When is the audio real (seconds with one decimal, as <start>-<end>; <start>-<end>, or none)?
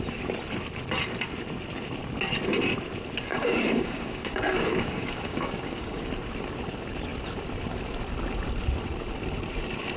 0.0-3.3; 6.1-10.0